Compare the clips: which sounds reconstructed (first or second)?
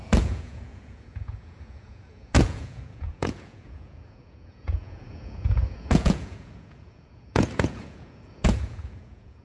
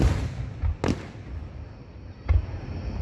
first